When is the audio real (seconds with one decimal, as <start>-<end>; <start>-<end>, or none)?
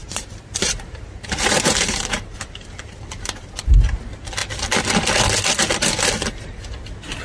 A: 4.0-7.2